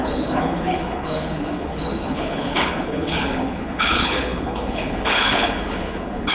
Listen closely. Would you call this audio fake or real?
fake